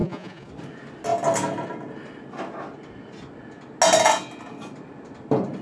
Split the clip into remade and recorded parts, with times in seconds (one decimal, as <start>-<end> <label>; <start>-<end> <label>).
0.0-0.5 remade; 0.5-5.6 recorded